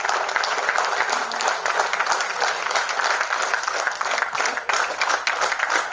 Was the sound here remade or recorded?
recorded